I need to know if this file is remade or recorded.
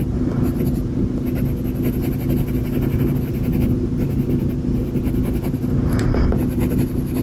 recorded